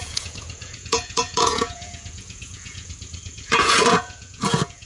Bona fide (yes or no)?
no